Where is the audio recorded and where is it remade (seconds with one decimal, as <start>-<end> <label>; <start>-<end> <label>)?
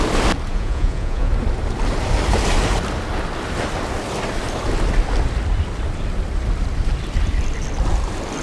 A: 0.0-0.5 recorded; 0.5-1.3 remade; 1.3-8.4 recorded